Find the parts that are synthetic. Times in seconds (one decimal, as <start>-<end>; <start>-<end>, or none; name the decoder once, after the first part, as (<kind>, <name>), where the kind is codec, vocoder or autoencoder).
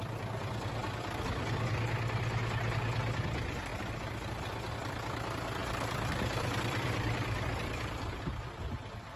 5.6-8.2 (vocoder, BigVGAN v2)